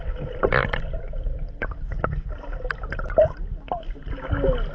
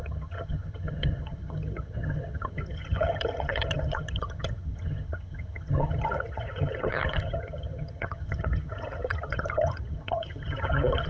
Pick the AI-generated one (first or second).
second